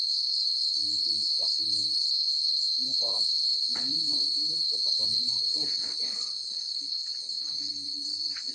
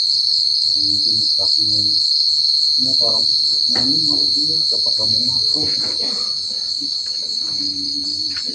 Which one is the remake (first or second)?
first